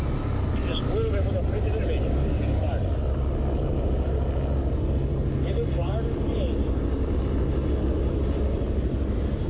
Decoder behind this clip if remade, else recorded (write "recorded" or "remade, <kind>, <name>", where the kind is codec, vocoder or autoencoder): recorded